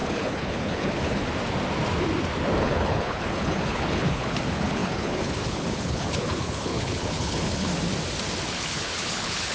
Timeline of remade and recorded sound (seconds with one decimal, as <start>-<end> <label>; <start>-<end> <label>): 0.0-1.3 remade; 1.3-2.6 recorded; 2.6-7.7 remade; 7.7-8.5 recorded; 8.5-9.5 remade